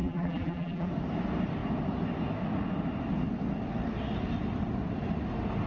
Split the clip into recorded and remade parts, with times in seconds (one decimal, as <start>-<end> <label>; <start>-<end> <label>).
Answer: 0.0-0.9 remade; 0.9-5.7 recorded